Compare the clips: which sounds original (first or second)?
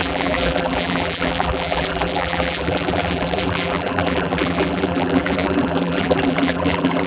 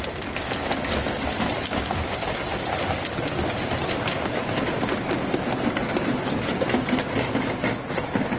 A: second